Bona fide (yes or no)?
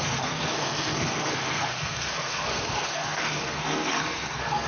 no